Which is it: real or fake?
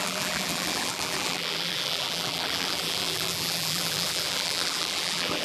fake